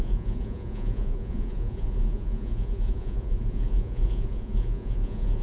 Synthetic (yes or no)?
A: yes